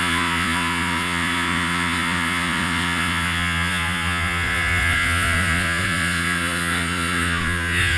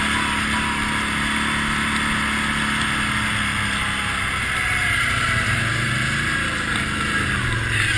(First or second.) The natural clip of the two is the second